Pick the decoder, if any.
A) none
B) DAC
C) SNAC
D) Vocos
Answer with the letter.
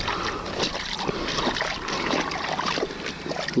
A